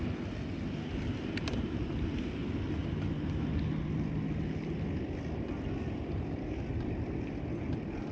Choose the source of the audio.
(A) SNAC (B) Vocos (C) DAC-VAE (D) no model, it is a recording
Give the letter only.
D